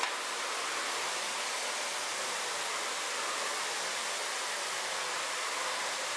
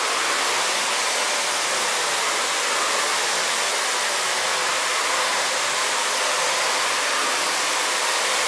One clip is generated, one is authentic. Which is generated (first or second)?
first